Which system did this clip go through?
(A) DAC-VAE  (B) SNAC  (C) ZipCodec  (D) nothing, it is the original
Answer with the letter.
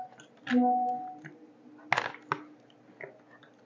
D